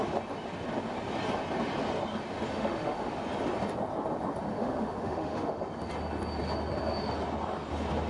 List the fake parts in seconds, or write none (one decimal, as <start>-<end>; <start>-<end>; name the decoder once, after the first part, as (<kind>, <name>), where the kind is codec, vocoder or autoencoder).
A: 2.5-3.1 (autoencoder, DAC-VAE); 4.5-5.6